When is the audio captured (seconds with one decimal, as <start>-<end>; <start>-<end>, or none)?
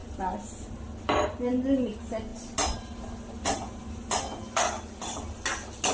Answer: 0.0-5.9